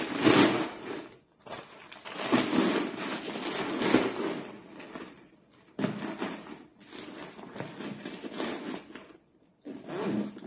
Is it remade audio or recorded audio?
recorded